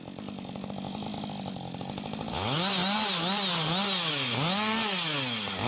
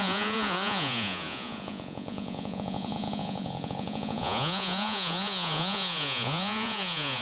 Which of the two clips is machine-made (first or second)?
second